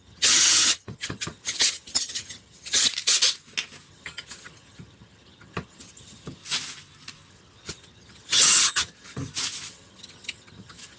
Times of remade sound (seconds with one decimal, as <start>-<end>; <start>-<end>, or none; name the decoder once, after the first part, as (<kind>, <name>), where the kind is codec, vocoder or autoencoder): 0.0-2.9 (vocoder, HiFi-GAN); 3.9-6.4; 7.3-9.2; 9.7-11.0